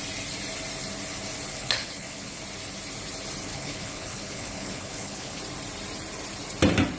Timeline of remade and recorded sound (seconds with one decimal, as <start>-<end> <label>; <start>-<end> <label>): 0.0-1.5 recorded; 1.5-2.4 remade; 2.4-3.5 recorded; 3.5-5.4 remade; 5.4-7.0 recorded